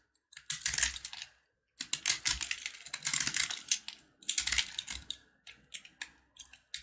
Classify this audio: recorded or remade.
recorded